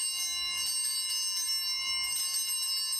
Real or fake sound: real